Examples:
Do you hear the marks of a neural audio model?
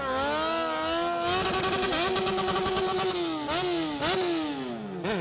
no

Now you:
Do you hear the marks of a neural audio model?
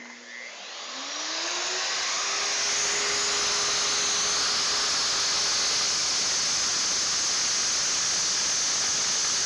no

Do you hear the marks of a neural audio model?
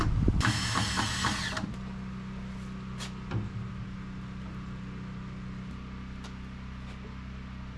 no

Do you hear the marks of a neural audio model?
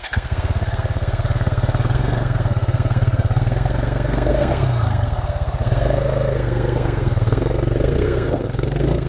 yes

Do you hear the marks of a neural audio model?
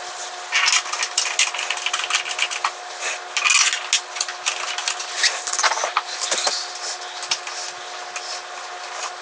no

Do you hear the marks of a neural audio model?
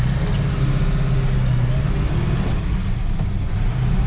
no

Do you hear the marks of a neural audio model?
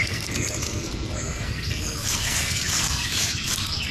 yes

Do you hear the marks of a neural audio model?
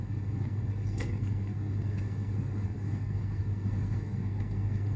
yes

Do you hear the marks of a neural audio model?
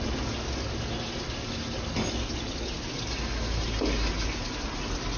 no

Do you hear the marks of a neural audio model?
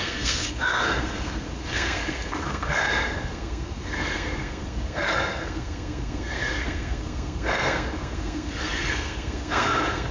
yes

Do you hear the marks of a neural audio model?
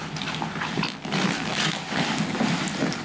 no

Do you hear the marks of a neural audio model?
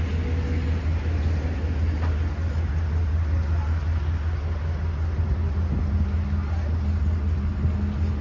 no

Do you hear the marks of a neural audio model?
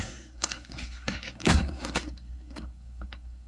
yes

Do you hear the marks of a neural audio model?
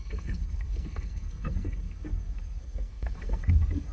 yes